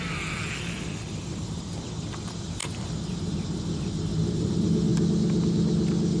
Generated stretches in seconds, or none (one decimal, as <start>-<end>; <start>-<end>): 0.0-4.9